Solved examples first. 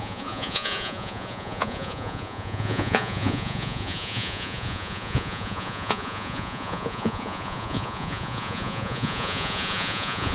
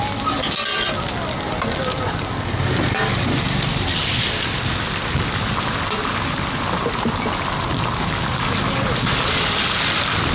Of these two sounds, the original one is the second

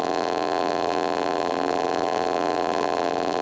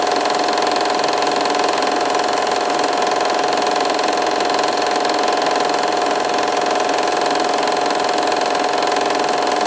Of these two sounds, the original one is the second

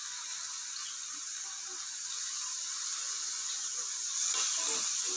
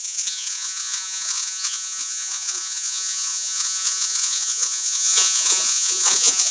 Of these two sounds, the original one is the first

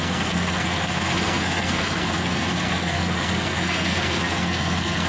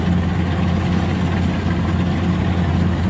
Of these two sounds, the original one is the second